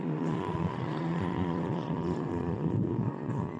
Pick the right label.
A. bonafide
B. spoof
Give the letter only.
B